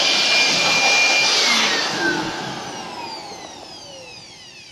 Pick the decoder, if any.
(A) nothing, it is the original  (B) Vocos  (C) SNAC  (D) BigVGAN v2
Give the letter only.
A